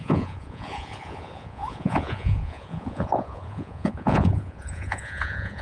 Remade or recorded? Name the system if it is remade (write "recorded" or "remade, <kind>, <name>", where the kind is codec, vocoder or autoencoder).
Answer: remade, vocoder, Vocos